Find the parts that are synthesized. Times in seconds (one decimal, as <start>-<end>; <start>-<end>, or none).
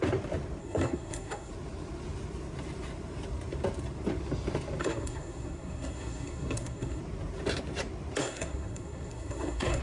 0.6-1.5; 4.8-7.0; 8.2-9.8